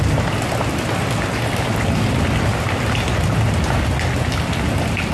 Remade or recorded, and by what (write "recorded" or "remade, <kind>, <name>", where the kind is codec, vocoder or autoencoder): recorded